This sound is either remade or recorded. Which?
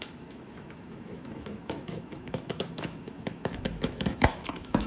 remade